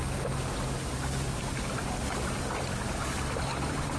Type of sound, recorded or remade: recorded